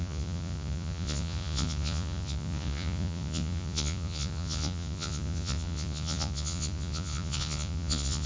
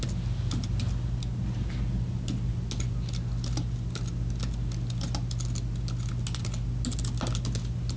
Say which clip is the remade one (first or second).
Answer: first